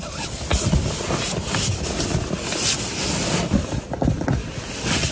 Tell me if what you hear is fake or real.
real